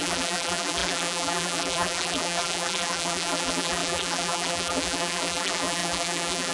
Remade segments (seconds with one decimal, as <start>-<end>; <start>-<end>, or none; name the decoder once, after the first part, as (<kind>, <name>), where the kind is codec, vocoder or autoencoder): 0.0-6.5 (vocoder, BigVGAN v2)